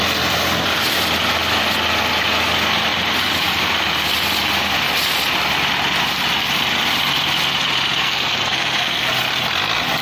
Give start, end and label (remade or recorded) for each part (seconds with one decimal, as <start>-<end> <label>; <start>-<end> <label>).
0.0-8.0 recorded; 8.0-9.1 remade; 9.1-10.0 recorded